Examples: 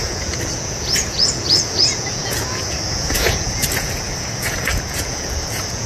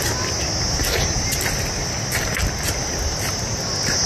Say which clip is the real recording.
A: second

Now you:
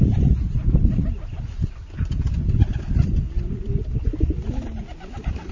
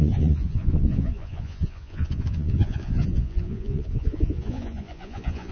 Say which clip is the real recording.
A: first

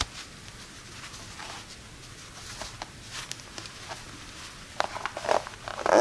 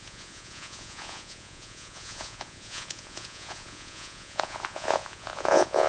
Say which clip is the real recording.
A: first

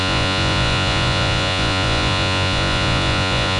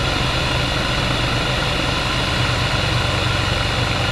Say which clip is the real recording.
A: second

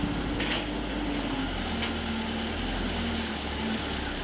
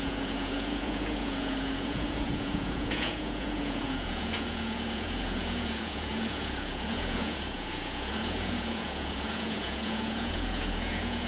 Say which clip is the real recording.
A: first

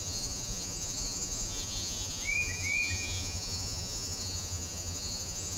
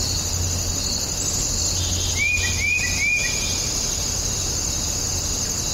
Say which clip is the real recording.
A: second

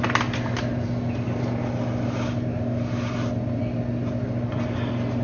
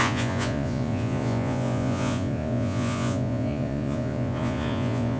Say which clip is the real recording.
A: first